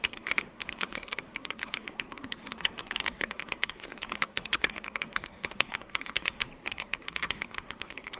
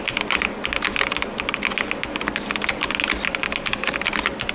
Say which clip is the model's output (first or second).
first